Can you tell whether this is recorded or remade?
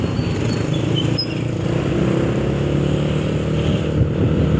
recorded